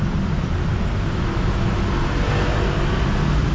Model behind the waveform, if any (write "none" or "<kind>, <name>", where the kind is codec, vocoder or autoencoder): none